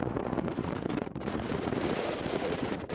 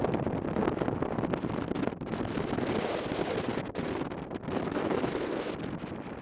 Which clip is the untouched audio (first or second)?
second